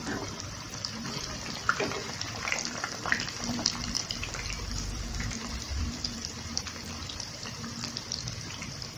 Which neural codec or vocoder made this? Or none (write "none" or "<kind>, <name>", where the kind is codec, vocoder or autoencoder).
vocoder, BigVGAN v2